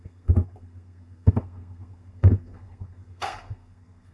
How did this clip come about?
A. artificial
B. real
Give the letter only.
A